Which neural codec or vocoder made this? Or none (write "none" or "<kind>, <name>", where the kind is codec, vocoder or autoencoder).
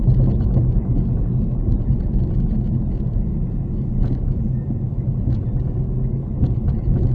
none